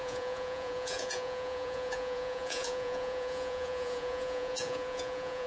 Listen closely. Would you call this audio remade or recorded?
remade